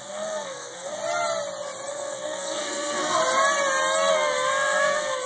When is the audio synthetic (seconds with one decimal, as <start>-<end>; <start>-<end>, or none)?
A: 0.0-1.0; 1.9-3.2; 4.1-5.3

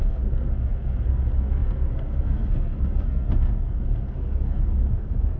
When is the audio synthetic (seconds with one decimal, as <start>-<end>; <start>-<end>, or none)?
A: 0.0-5.4

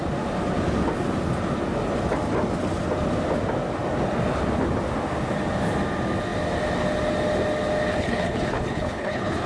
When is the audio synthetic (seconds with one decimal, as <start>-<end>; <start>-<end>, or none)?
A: 7.9-9.5

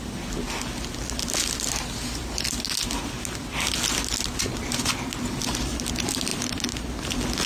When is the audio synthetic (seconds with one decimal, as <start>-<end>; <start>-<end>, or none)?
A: none

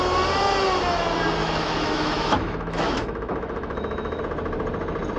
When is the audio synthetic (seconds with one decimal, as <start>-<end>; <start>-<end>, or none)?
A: 1.4-4.2